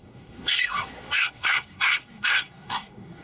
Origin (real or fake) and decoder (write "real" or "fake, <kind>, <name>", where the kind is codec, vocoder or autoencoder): fake, codec, SNAC